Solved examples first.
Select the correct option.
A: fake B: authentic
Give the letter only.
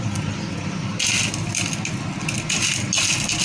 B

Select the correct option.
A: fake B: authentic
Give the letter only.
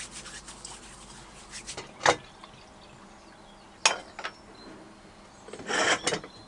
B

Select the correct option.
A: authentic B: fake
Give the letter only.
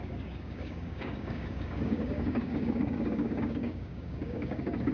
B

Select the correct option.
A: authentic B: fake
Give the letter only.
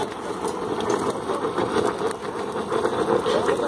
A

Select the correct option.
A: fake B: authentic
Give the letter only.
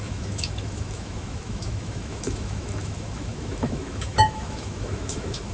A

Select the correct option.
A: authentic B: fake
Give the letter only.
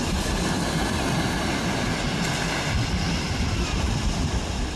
A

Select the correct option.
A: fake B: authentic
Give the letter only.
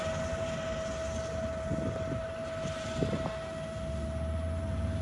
B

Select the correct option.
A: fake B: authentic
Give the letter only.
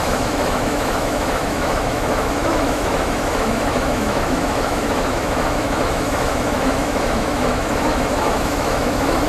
A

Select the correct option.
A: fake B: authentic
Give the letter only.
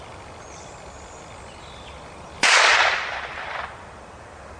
A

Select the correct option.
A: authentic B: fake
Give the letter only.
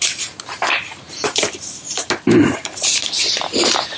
B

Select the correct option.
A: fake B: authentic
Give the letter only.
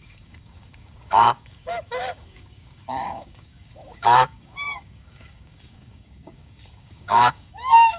A